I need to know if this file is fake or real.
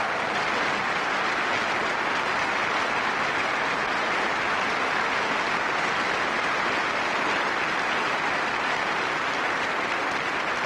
real